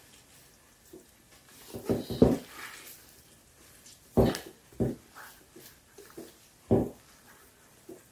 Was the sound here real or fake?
real